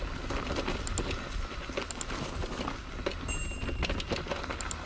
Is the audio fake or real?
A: real